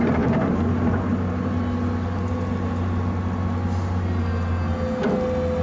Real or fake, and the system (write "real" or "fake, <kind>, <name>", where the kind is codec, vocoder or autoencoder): real